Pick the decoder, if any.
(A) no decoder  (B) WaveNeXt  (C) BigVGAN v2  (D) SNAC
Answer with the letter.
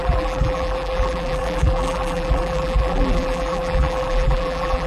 C